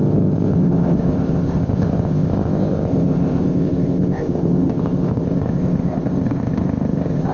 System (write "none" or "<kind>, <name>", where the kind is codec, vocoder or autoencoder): codec, ZipCodec